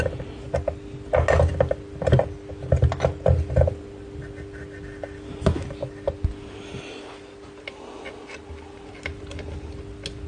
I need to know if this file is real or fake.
real